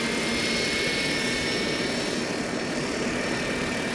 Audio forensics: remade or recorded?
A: recorded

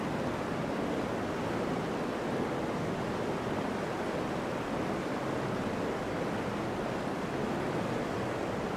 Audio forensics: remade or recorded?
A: recorded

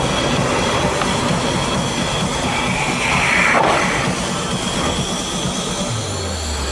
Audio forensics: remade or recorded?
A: recorded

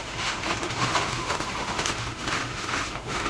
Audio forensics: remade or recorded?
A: remade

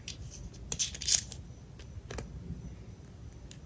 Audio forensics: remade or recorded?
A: recorded